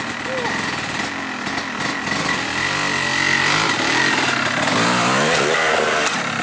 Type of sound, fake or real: real